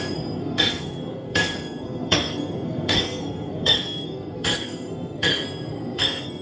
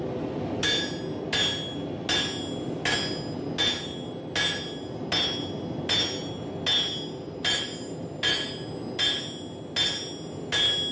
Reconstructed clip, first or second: first